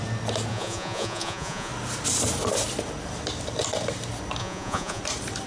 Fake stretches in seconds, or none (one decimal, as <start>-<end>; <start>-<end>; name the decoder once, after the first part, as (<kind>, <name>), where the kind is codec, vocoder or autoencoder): 0.5-1.7 (vocoder, Vocos); 4.4-5.0